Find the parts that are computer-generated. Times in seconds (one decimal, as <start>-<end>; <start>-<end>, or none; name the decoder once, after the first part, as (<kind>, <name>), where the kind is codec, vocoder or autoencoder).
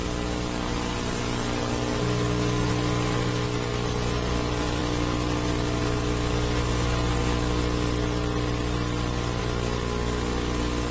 none